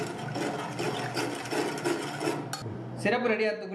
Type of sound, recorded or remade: recorded